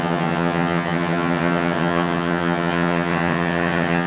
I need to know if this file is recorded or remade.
remade